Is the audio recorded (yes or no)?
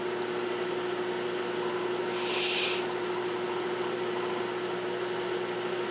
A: yes